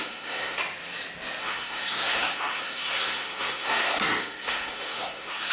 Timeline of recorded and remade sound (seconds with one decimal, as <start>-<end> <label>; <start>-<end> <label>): 0.0-0.6 remade; 0.6-1.4 recorded; 1.4-5.5 remade